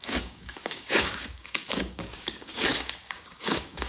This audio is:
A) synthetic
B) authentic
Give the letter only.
A